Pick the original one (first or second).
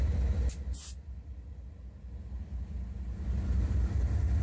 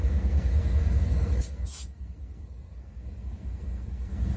first